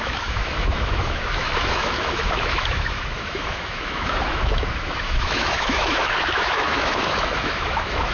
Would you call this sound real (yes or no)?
no